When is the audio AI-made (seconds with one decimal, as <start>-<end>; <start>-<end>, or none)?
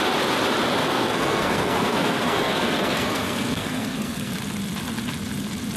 0.8-4.3